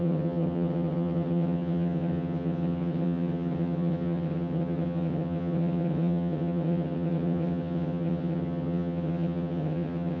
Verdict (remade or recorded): remade